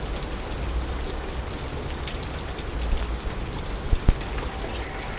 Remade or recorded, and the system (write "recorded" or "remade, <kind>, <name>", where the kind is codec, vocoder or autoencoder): recorded